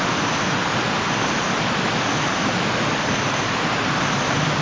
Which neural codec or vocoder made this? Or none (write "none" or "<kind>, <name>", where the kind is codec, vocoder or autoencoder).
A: none